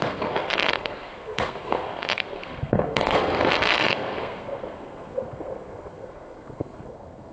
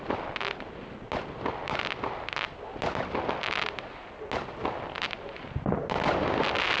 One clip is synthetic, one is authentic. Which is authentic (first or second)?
second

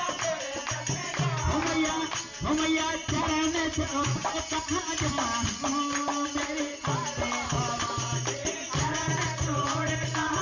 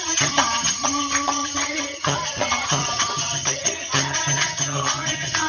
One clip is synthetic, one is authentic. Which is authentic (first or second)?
first